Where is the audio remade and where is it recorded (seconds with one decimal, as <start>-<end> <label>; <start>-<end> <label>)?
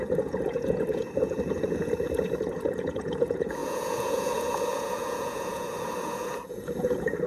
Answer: 0.0-7.3 remade